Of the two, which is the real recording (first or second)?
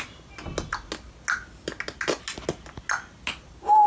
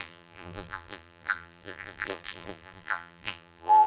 first